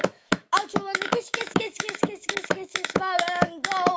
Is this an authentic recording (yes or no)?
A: no